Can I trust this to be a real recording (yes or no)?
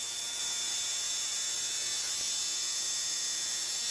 yes